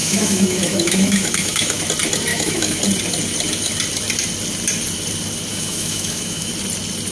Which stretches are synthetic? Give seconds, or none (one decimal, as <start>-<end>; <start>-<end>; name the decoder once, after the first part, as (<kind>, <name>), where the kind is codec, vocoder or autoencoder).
0.0-1.8 (autoencoder, DAC-VAE); 2.3-2.8; 5.5-6.5